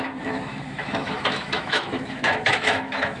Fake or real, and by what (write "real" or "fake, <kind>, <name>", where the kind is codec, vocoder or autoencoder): fake, autoencoder, DAC-VAE